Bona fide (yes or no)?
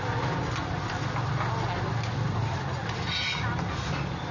yes